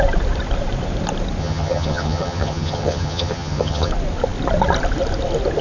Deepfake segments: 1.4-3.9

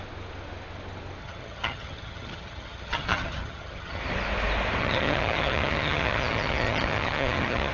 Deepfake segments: 1.2-4.0; 4.8-7.7

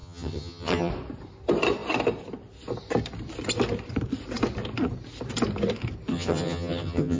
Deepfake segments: 0.0-0.9; 6.1-7.2

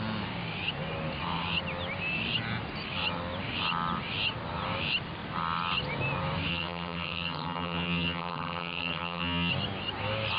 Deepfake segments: 6.5-9.5

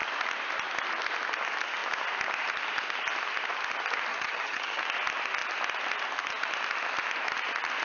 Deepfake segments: 4.1-4.8

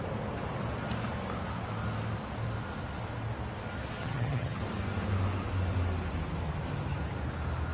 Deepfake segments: 4.0-4.6